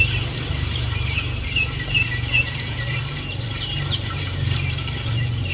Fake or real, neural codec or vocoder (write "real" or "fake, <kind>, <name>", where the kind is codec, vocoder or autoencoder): fake, vocoder, BigVGAN v2